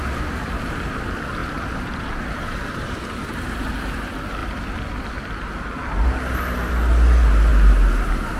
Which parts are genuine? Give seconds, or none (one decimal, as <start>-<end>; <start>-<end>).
0.0-1.4; 3.7-8.4